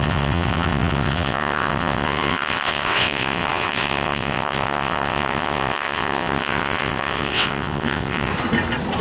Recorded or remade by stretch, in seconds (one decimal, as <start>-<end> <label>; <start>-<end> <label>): 0.0-8.3 remade; 8.3-9.0 recorded